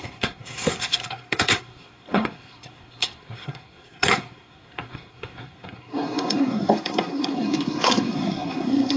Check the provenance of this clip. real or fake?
fake